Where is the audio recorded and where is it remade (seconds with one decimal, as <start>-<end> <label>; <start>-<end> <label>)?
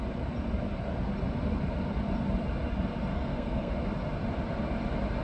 0.0-3.1 recorded; 3.1-3.7 remade; 3.7-5.2 recorded